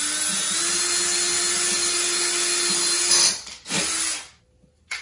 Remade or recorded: recorded